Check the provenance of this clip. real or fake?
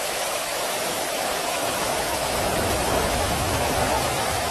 fake